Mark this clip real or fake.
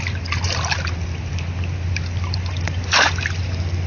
fake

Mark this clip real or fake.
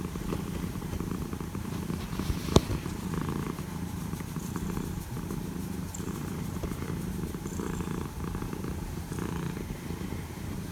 fake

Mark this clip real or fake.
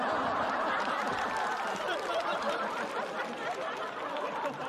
fake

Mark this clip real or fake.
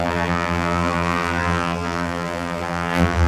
fake